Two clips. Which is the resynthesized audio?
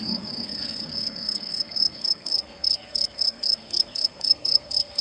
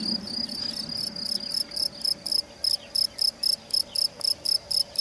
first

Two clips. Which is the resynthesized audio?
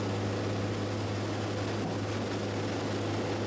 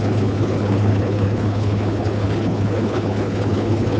second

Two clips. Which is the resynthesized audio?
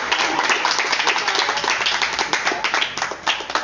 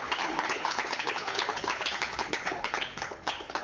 second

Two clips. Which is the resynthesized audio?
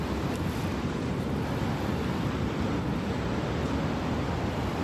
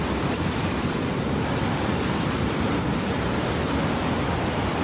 second